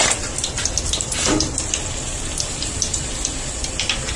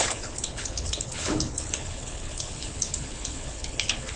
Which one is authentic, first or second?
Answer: first